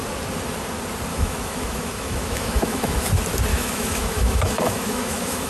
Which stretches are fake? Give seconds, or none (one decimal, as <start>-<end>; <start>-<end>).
1.1-3.1; 3.5-5.5